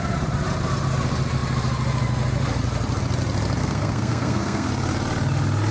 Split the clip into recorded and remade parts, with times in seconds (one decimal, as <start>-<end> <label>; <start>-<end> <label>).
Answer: 0.0-3.6 recorded; 3.6-4.7 remade; 4.7-5.7 recorded